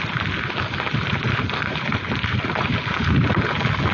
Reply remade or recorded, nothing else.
recorded